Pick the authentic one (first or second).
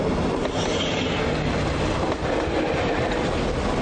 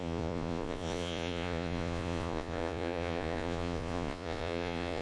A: first